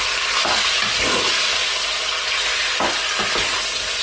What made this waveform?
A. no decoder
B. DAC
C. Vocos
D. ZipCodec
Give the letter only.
A